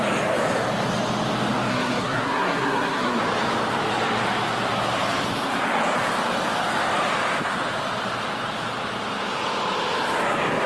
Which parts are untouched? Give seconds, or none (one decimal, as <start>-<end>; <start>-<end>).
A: 0.0-1.7; 3.2-10.7